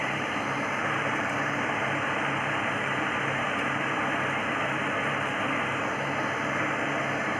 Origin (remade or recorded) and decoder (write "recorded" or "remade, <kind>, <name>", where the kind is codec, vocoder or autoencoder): remade, vocoder, BigVGAN v2